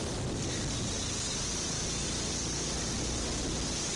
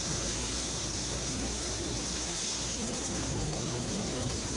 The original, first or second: first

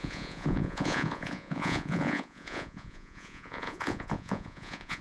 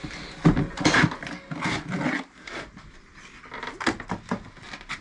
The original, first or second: second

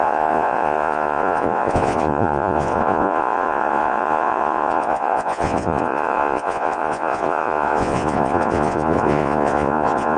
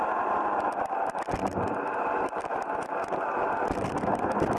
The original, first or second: second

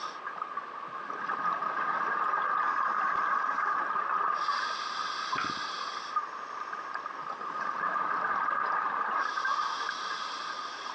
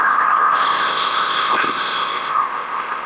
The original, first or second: first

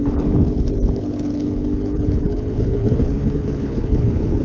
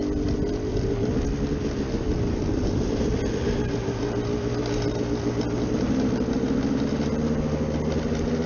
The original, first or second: second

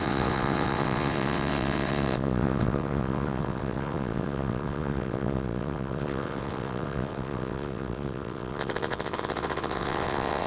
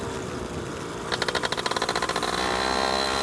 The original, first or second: second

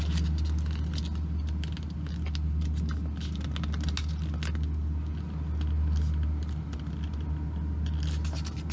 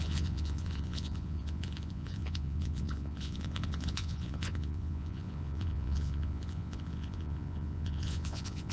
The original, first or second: first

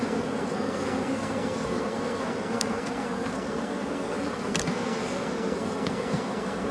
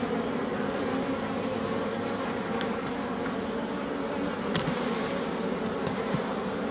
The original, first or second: second